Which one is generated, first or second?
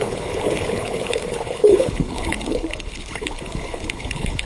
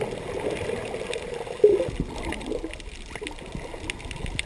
first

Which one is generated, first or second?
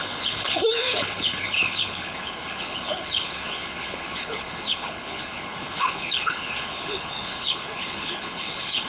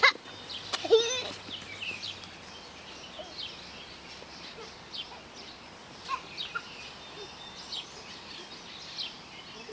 first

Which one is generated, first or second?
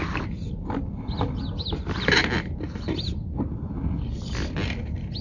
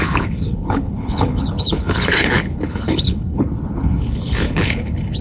second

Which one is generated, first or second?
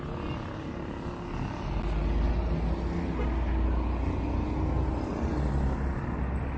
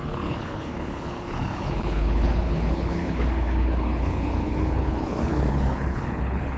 second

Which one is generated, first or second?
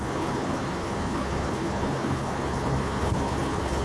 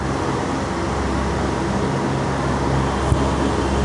first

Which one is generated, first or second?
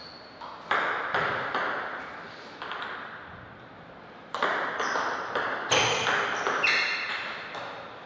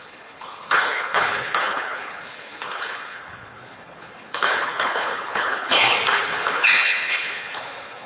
second